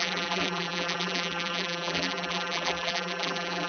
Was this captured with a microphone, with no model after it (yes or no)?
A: no